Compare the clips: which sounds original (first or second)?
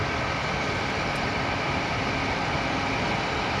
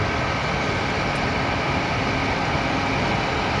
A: second